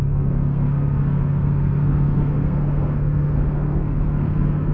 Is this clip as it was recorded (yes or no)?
no